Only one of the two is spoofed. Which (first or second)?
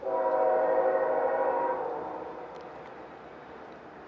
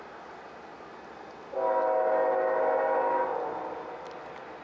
first